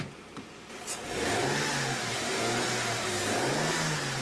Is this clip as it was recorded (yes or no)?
yes